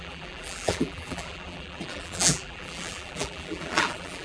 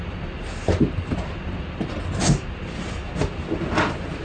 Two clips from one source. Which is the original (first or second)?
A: second